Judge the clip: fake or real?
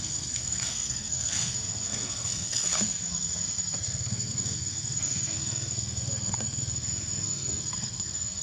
fake